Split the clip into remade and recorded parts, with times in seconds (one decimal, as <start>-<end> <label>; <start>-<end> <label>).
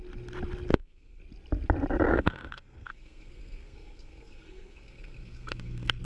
0.0-0.7 recorded; 0.7-1.2 remade; 1.2-2.1 recorded; 2.1-6.0 remade